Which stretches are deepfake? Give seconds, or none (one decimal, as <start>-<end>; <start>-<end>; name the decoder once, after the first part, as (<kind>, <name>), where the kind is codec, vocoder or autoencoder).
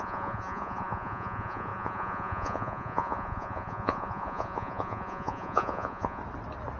0.0-6.2 (vocoder, Vocos)